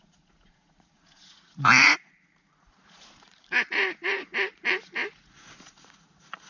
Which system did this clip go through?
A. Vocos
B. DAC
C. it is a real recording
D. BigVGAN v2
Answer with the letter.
A